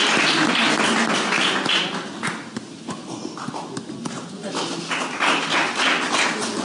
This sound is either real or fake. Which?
real